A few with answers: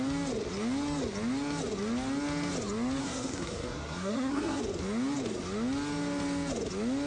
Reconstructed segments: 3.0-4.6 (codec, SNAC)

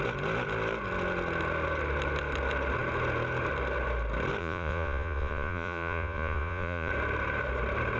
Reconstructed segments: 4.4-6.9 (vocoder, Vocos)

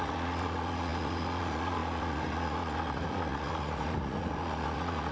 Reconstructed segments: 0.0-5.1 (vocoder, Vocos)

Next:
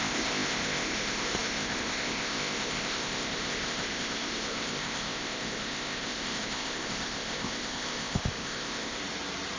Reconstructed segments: 0.0-9.0 (codec, ZipCodec)